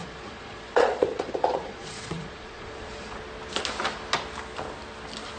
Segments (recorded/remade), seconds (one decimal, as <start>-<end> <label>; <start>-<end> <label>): 0.0-3.2 remade; 3.2-5.4 recorded